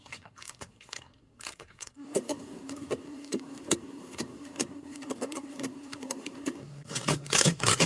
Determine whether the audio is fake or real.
fake